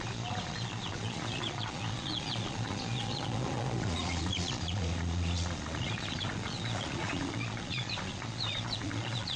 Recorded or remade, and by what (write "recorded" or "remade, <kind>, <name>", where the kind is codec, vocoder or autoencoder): remade, vocoder, Vocos